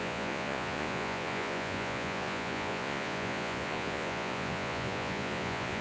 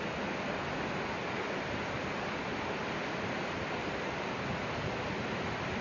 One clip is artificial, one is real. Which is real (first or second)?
second